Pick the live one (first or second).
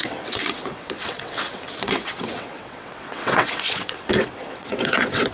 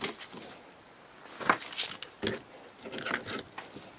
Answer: second